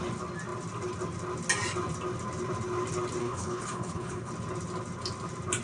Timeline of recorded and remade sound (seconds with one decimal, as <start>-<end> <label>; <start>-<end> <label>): 0.0-3.2 recorded; 3.2-4.3 remade; 4.3-5.6 recorded